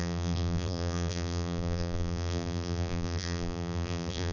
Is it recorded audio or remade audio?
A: remade